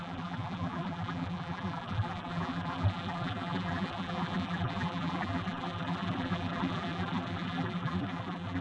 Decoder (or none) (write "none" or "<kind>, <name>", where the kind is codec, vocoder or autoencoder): vocoder, BigVGAN v2